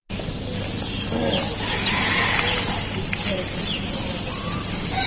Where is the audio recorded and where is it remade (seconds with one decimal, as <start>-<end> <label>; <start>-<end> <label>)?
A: 0.0-5.1 recorded